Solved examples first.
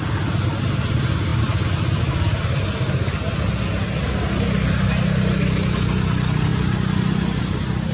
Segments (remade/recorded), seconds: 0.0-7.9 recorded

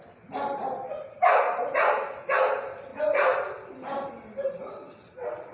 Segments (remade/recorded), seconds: 0.0-5.5 recorded

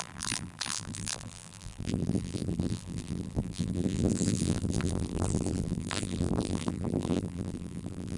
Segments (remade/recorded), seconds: 0.0-8.2 remade

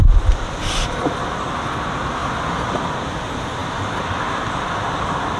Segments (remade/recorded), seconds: 0.0-2.2 recorded; 2.2-3.2 remade; 3.2-5.4 recorded

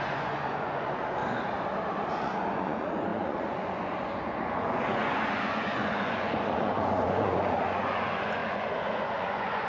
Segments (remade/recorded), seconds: 0.0-1.2 remade; 1.2-2.1 recorded; 2.1-9.7 remade

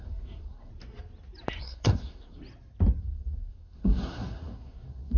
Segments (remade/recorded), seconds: 0.0-0.7 remade; 0.7-1.6 recorded; 1.6-2.4 remade; 2.4-3.0 recorded; 3.0-5.2 remade

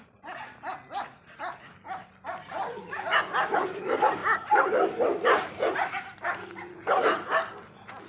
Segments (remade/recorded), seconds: 0.0-8.1 recorded

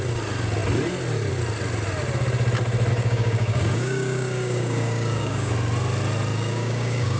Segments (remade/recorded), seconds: 0.0-2.9 recorded; 2.9-5.5 remade; 5.5-6.3 recorded; 6.3-7.2 remade